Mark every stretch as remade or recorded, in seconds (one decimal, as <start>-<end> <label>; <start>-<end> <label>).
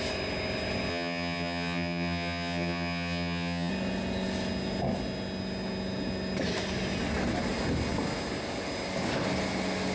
0.0-0.9 recorded; 0.9-3.7 remade; 3.7-9.9 recorded